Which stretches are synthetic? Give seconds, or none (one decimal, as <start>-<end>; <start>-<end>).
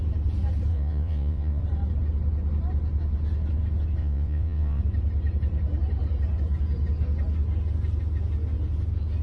0.7-1.6; 4.0-4.8